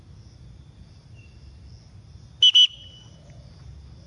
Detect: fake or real real